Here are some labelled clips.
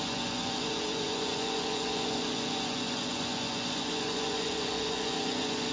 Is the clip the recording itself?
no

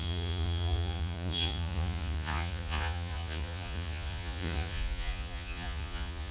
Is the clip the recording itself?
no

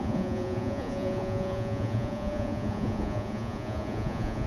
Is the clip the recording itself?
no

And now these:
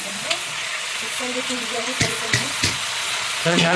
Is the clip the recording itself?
no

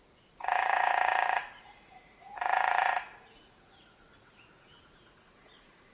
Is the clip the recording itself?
no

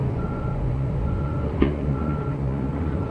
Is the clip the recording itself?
no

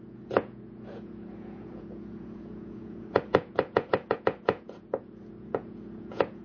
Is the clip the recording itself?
no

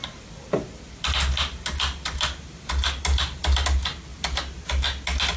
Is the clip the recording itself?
yes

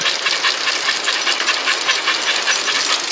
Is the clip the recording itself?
yes